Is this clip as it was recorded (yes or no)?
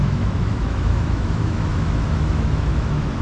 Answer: no